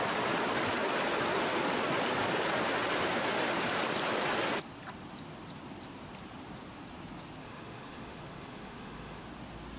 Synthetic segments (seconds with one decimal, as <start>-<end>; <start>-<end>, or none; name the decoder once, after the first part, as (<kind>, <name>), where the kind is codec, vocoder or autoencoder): 7.4-9.2 (autoencoder, DAC-VAE)